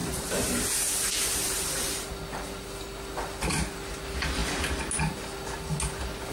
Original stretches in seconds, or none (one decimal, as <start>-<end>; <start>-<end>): 0.5-6.3